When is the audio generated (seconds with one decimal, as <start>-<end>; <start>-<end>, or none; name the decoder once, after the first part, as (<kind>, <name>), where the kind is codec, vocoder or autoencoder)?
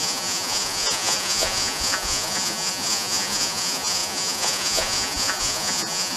0.0-6.2 (vocoder, Vocos)